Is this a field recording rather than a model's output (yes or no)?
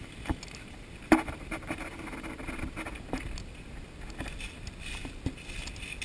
yes